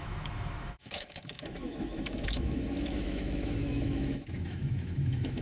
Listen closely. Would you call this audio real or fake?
fake